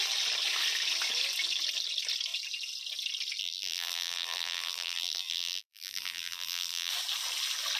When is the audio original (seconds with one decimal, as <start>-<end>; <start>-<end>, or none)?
0.0-3.4; 6.9-7.8